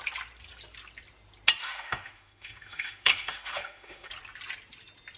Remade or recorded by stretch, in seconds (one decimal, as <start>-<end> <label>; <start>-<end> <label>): 0.0-1.6 recorded; 1.6-4.1 remade; 4.1-5.2 recorded